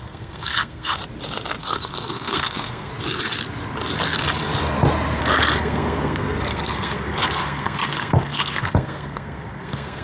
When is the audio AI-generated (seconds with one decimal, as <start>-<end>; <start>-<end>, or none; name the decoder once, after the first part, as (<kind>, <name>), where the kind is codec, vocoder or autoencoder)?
0.0-1.0 (codec, SNAC); 1.6-2.9; 5.2-10.0